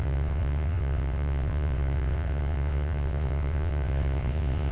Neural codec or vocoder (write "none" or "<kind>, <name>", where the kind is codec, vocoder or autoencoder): vocoder, WaveNeXt